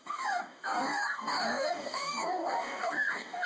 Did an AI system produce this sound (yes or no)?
yes